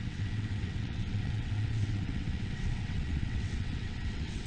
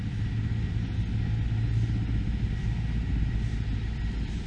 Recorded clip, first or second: second